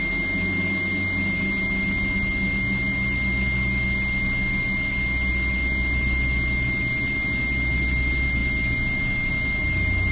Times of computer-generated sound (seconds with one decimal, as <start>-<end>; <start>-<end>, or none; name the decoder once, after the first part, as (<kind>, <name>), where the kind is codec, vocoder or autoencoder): none